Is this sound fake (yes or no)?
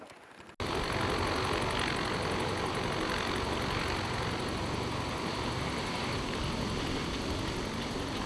no